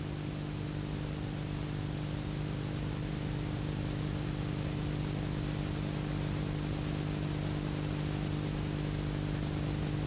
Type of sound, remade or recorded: recorded